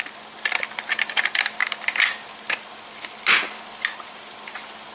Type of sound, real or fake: real